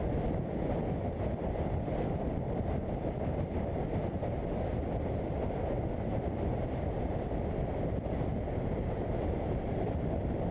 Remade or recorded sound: recorded